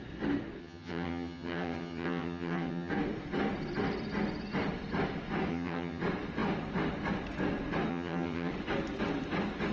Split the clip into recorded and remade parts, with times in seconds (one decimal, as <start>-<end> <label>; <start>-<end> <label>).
0.0-0.6 recorded; 0.6-2.9 remade; 2.9-5.5 recorded; 5.5-6.0 remade; 6.0-7.9 recorded; 7.9-8.5 remade; 8.5-9.7 recorded